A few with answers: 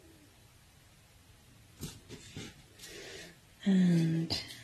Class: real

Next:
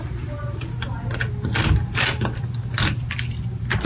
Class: real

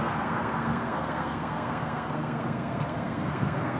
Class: fake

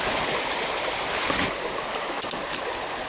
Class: real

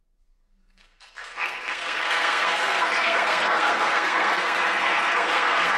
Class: fake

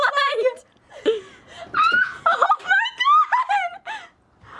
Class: real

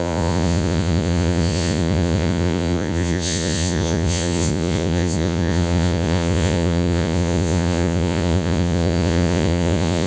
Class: fake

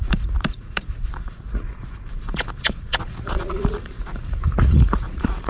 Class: fake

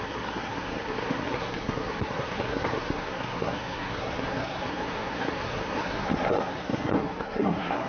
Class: fake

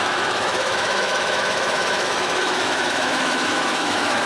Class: fake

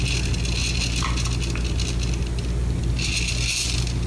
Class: real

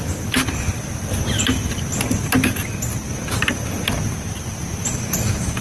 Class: real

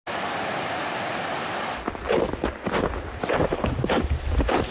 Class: real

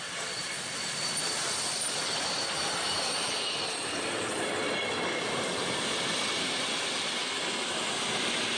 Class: real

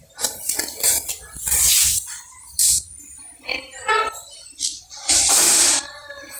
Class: fake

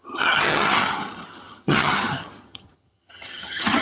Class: fake